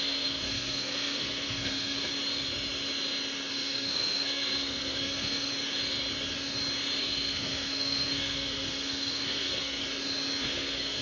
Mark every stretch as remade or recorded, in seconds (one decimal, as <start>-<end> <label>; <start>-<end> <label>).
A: 0.0-2.1 remade; 2.1-3.5 recorded; 3.5-5.5 remade; 5.5-7.0 recorded; 7.0-9.8 remade; 9.8-10.4 recorded; 10.4-11.0 remade